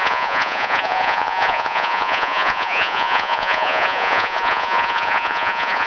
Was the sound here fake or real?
fake